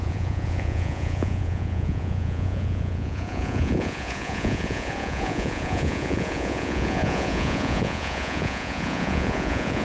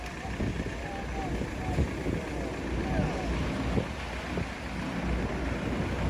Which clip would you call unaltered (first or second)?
second